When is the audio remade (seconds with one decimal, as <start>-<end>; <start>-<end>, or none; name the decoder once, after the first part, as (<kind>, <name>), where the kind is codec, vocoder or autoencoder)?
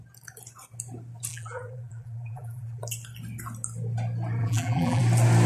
1.3-2.8 (vocoder, BigVGAN v2); 4.4-5.0